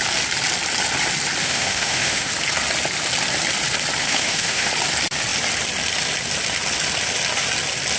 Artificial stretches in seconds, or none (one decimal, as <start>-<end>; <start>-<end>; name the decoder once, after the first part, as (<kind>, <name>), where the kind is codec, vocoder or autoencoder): 1.4-2.3 (autoencoder, DAC-VAE); 4.0-4.7